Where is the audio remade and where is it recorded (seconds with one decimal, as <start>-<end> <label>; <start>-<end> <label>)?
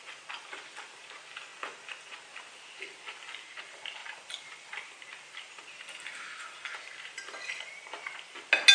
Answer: 0.0-1.5 recorded; 1.5-2.1 remade; 2.1-4.0 recorded; 4.0-8.2 remade; 8.2-8.7 recorded